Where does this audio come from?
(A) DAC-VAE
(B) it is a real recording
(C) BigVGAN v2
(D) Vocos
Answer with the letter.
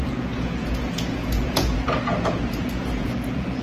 D